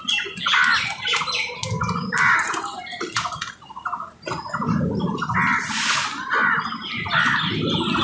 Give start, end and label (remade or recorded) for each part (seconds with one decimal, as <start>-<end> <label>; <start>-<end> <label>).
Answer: 0.0-8.0 recorded